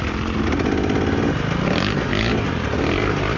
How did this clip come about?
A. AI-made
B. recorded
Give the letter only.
B